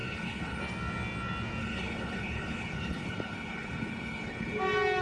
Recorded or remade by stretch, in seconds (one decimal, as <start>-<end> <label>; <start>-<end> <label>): 0.0-0.6 remade; 0.6-1.6 recorded; 1.6-4.6 remade; 4.6-5.0 recorded